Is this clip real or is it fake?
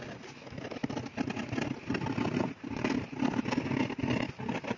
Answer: real